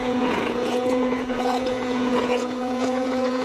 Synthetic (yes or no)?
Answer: yes